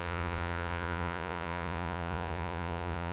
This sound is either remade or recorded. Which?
remade